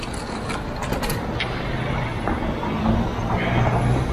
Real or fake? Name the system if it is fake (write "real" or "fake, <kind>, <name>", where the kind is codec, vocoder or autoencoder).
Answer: real